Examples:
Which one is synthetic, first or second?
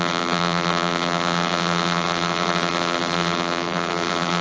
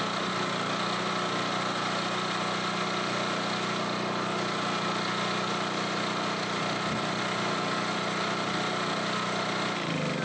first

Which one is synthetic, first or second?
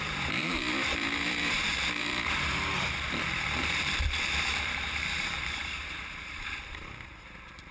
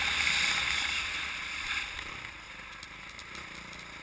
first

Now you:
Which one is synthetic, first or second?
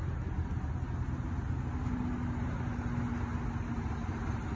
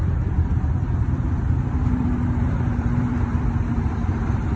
second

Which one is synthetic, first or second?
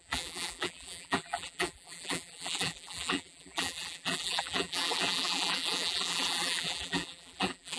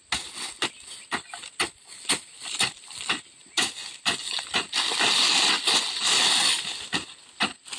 first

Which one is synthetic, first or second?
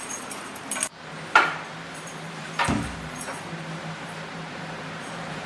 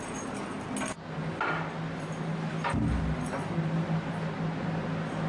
first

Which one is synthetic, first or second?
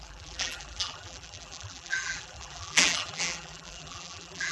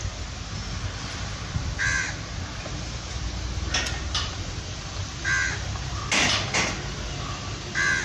first